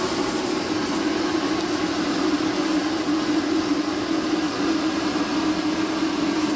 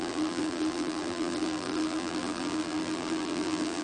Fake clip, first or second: second